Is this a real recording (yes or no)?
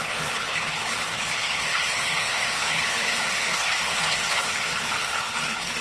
no